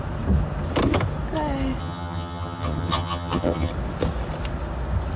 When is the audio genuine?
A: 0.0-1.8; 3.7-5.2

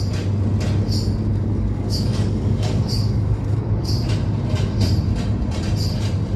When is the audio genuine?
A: 0.0-1.3; 3.9-6.4

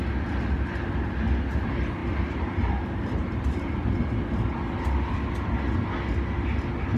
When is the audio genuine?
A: 0.0-2.0; 3.7-7.0

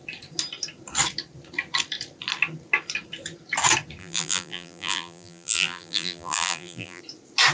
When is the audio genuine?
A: 0.0-4.0; 7.0-7.5

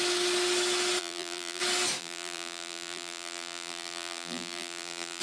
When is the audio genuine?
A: 0.0-1.0; 1.6-2.0

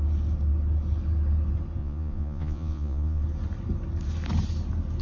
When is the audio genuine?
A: 0.0-1.8; 3.2-5.0

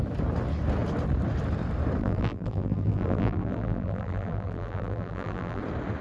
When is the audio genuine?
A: 0.0-2.0; 5.6-6.0

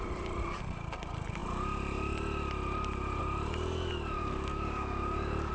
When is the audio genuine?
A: 0.0-4.2